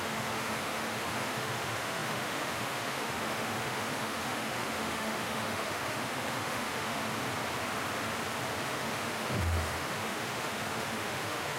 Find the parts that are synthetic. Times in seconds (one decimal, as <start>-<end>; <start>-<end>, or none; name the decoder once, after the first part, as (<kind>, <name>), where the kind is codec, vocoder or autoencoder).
0.0-7.0 (autoencoder, DAC-VAE); 8.6-11.6